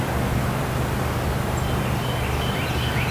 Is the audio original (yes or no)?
yes